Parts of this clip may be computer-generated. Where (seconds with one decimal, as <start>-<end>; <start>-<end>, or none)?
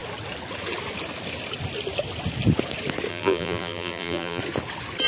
3.1-4.4